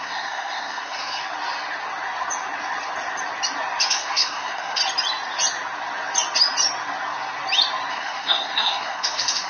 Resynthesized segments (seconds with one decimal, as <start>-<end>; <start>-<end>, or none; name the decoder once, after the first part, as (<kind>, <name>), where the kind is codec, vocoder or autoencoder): 0.0-1.2 (codec, SNAC); 3.9-4.8; 7.9-9.5